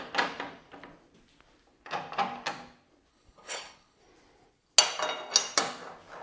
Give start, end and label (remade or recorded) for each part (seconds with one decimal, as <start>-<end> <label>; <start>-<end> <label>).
0.0-3.1 recorded; 3.1-4.0 remade; 4.0-6.2 recorded